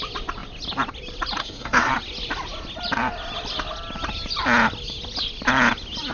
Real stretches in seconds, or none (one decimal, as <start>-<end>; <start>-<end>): 0.0-1.4; 1.9-6.1